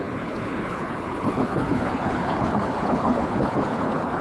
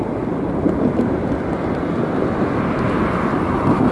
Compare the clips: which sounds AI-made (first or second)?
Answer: first